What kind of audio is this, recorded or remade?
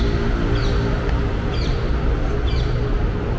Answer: recorded